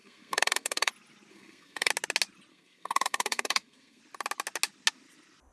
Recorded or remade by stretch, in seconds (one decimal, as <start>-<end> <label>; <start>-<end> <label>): 0.0-0.9 remade; 0.9-1.3 recorded; 1.3-1.9 remade; 1.9-2.5 recorded; 2.5-4.0 remade; 4.0-5.5 recorded